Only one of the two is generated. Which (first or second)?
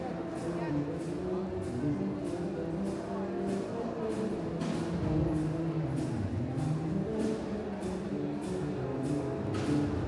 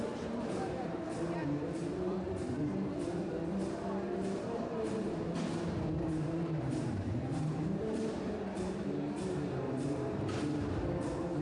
second